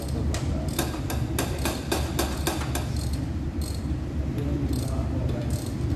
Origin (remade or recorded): recorded